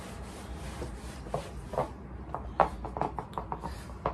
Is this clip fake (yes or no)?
no